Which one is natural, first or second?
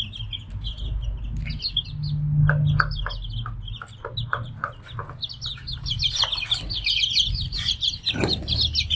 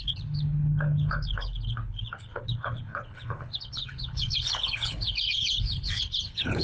first